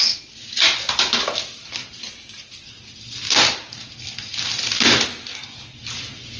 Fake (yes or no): no